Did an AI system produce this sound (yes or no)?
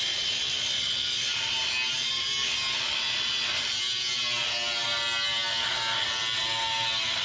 no